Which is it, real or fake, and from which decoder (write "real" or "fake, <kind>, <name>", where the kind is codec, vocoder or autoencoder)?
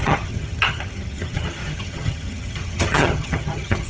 fake, vocoder, HiFi-GAN